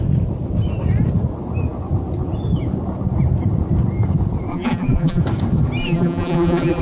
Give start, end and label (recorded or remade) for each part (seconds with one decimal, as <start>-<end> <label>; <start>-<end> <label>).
0.0-4.5 recorded; 4.5-5.2 remade; 5.2-5.8 recorded; 5.8-6.8 remade